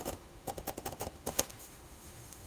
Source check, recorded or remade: remade